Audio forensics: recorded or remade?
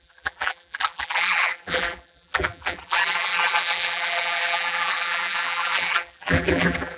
remade